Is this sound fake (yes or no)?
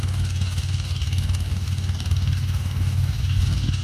yes